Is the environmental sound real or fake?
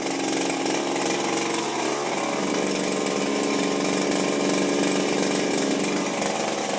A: real